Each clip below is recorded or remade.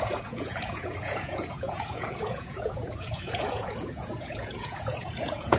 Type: remade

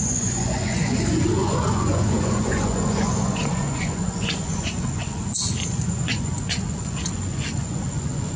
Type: remade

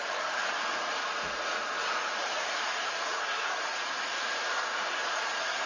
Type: remade